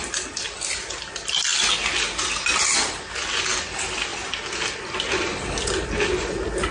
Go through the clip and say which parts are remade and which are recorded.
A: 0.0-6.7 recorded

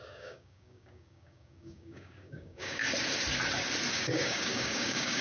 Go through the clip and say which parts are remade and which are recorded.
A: 0.0-2.8 remade; 2.8-3.9 recorded; 3.9-5.2 remade